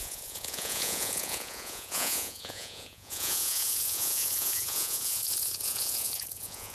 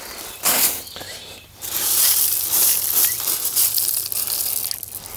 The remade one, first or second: first